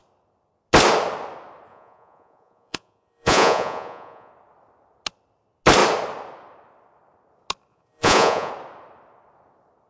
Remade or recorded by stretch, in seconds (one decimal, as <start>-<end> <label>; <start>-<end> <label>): 0.0-1.7 recorded; 1.7-4.3 remade; 4.3-7.7 recorded; 7.7-8.5 remade; 8.5-9.9 recorded